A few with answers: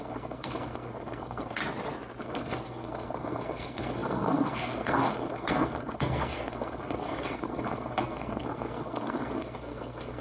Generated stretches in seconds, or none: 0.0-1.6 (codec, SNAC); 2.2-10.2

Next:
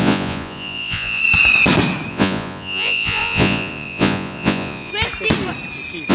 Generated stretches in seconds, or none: 0.0-1.2 (vocoder, Vocos); 2.1-4.9

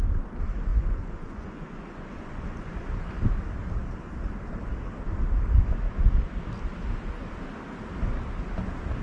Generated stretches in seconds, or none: 0.7-2.7 (vocoder, Vocos)

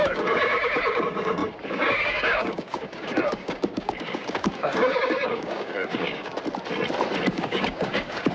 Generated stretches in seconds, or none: 0.0-6.3 (codec, DAC); 7.3-8.3